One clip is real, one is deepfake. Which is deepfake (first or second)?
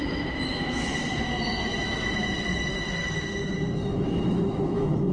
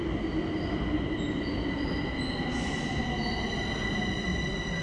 first